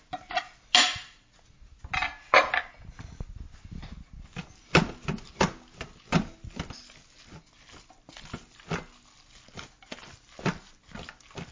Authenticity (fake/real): real